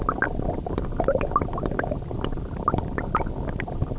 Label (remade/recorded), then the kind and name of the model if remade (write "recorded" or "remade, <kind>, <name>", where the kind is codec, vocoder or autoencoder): recorded